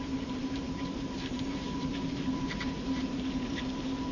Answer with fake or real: fake